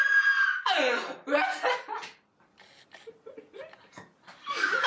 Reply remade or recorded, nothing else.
recorded